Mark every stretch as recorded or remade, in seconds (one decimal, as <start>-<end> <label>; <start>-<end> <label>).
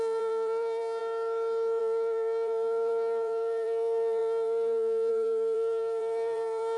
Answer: 0.0-1.0 remade; 1.0-1.8 recorded; 1.8-6.8 remade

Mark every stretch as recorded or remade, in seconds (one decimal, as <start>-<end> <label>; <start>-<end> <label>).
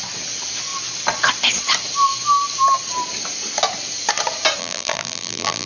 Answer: 0.0-4.6 recorded; 4.6-5.7 remade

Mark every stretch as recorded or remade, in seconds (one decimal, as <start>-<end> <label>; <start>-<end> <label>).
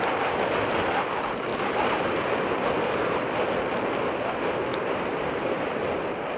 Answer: 0.0-1.5 recorded; 1.5-2.7 remade; 2.7-4.7 recorded; 4.7-5.6 remade; 5.6-6.4 recorded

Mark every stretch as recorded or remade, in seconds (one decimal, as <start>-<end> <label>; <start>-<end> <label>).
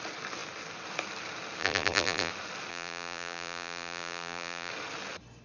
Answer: 0.0-1.6 recorded; 1.6-2.3 remade; 2.3-2.7 recorded; 2.7-4.7 remade; 4.7-5.4 recorded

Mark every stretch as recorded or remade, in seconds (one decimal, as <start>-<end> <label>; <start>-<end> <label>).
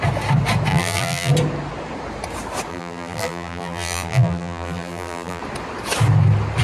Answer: 0.0-0.7 recorded; 0.7-1.3 remade; 1.3-2.7 recorded; 2.7-5.4 remade; 5.4-6.6 recorded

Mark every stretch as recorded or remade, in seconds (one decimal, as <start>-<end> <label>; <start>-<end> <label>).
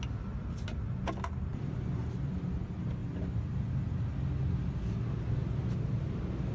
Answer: 0.0-6.5 recorded